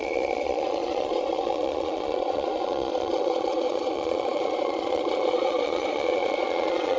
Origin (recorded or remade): remade